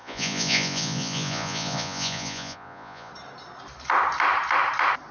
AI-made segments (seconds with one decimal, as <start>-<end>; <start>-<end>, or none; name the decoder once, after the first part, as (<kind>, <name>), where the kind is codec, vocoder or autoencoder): 0.0-3.1 (vocoder, Vocos)